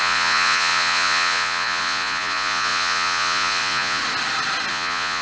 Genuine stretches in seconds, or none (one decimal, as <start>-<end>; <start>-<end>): 4.0-4.7